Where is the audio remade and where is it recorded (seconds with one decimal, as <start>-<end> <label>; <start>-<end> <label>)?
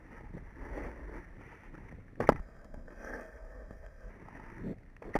0.0-2.4 recorded; 2.4-4.1 remade; 4.1-5.2 recorded